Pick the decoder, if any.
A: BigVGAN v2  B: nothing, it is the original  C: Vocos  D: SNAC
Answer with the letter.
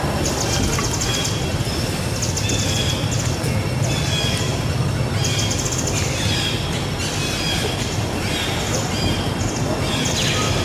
B